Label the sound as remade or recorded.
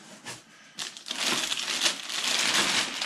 recorded